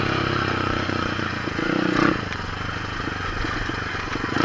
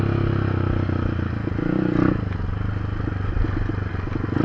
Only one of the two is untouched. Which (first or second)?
second